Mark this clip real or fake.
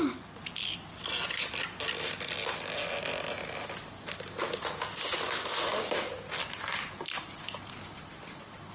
real